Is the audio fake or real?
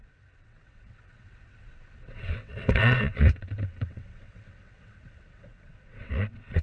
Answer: fake